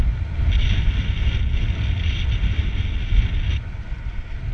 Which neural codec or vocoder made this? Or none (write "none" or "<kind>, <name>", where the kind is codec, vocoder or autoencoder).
none